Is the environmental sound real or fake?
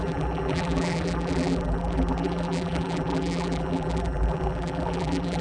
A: fake